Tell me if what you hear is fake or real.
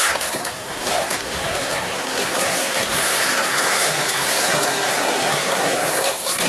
fake